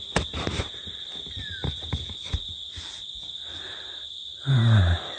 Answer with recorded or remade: recorded